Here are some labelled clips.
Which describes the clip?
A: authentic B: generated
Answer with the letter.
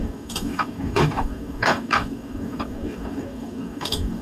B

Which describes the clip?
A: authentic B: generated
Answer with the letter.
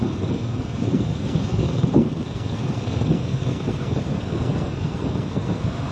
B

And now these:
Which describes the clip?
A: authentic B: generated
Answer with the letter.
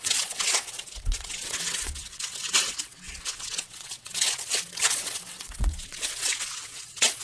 B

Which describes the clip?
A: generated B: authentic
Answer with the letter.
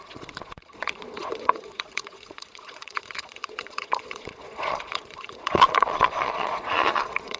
A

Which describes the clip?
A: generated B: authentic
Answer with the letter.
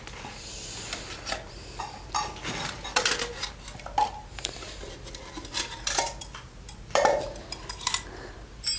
B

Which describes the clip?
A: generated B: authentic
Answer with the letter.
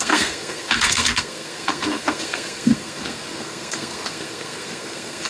A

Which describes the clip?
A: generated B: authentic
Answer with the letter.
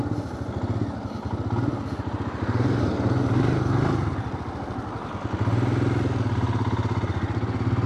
B